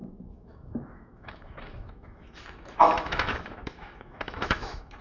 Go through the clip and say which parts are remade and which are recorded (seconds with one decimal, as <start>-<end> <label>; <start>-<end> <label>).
0.0-5.0 remade